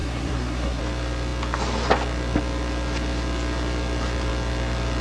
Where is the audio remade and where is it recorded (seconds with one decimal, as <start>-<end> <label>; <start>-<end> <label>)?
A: 0.0-0.8 remade; 0.8-5.0 recorded